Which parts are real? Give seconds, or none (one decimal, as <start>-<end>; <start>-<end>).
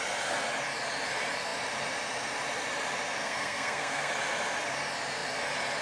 0.0-3.2; 4.1-5.8